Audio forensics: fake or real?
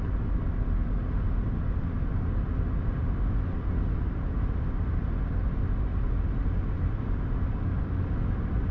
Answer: real